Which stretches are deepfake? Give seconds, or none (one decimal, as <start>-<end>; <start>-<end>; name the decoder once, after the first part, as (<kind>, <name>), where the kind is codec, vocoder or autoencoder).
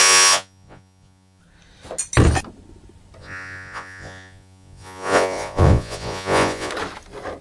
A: 0.0-1.4 (vocoder, Vocos); 3.2-6.7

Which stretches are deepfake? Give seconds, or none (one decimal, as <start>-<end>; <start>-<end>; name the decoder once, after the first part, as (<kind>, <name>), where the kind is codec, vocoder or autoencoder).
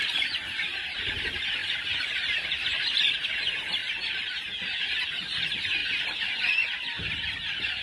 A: none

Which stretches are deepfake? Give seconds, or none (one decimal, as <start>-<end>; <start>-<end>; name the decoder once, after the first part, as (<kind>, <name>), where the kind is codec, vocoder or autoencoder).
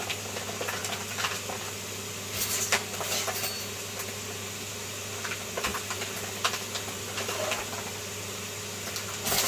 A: none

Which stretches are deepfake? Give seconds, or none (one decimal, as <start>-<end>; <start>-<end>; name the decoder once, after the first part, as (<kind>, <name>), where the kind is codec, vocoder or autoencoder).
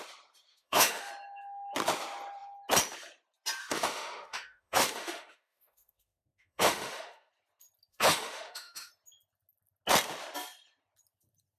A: 0.5-1.1 (autoencoder, DAC-VAE); 3.6-7.3; 7.9-8.9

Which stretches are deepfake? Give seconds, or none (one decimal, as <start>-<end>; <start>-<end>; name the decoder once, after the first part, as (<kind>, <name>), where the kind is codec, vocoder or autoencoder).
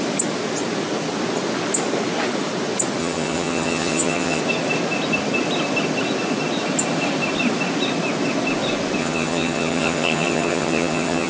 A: 3.0-4.4 (vocoder, HiFi-GAN); 9.0-11.3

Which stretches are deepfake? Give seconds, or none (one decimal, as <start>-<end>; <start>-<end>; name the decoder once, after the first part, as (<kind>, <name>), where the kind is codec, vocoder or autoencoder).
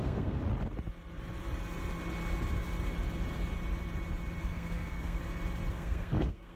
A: 0.0-0.4 (codec, SNAC); 4.4-5.2; 5.7-6.6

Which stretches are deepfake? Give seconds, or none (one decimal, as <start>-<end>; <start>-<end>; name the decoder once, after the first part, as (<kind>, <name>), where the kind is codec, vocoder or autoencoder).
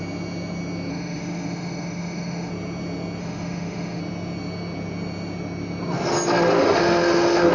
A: 0.9-2.5 (autoencoder, DAC-VAE); 3.2-4.0; 6.6-7.5